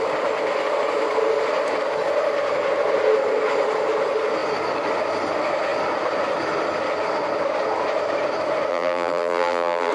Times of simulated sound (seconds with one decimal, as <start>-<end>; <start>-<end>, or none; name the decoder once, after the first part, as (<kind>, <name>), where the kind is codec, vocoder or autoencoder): 8.7-9.9 (vocoder, BigVGAN v2)